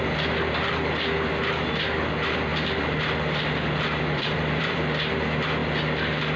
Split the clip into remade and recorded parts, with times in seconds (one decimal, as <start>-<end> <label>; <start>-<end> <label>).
0.0-2.5 recorded; 2.5-4.8 remade; 4.8-6.4 recorded